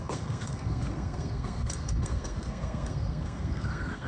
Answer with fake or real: fake